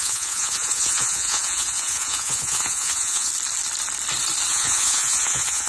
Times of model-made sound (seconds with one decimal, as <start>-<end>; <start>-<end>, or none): 0.0-3.3; 4.5-5.7